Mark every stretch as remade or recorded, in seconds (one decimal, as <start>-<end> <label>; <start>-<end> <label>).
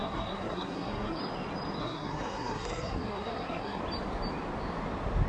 0.0-1.2 remade; 1.2-1.8 recorded; 1.8-3.8 remade; 3.8-5.3 recorded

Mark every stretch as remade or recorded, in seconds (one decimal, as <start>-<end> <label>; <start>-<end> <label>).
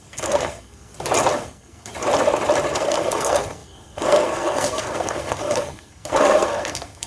0.0-0.9 remade; 0.9-1.4 recorded; 1.4-1.9 remade; 1.9-2.7 recorded; 2.7-7.1 remade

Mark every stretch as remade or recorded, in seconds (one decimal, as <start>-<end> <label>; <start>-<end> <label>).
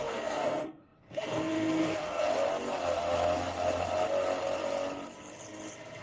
0.0-2.3 remade; 2.3-6.0 recorded